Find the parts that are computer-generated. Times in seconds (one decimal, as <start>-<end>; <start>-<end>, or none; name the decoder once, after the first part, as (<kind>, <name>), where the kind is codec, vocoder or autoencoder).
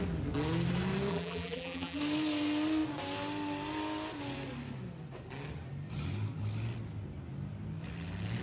1.1-2.0 (vocoder, BigVGAN v2)